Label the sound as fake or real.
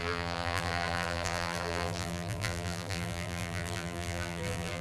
fake